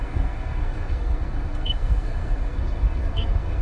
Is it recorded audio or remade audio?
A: remade